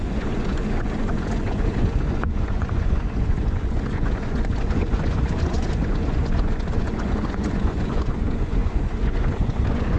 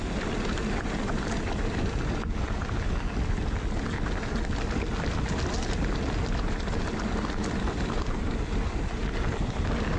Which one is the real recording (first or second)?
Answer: second